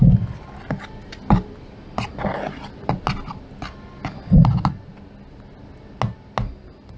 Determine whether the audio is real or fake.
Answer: real